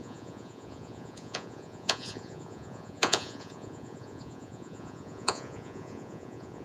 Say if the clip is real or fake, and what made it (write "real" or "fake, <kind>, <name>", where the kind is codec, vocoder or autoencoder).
fake, vocoder, Vocos